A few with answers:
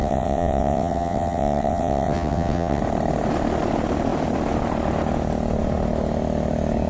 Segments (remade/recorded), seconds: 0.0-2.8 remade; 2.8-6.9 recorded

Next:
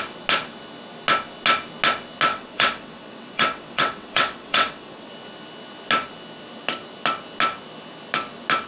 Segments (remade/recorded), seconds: 0.0-2.3 recorded; 2.3-5.1 remade; 5.1-8.7 recorded

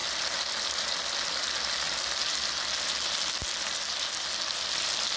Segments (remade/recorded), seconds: 0.0-5.2 recorded

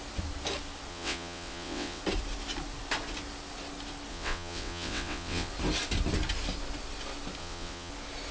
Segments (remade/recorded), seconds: 0.0-0.9 recorded; 0.9-2.0 remade; 2.0-4.1 recorded; 4.1-5.5 remade; 5.5-7.4 recorded; 7.4-7.9 remade; 7.9-8.3 recorded

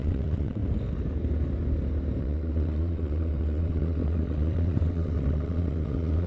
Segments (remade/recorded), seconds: 0.0-0.6 remade; 0.6-2.2 recorded; 2.2-6.3 remade

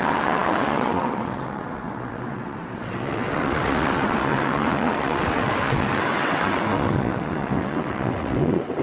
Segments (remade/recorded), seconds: 0.0-8.8 remade